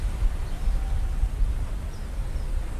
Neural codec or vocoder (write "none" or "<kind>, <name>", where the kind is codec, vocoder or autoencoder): none